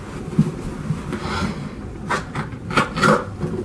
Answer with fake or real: real